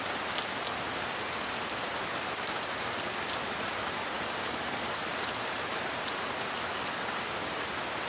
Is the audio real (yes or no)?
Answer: yes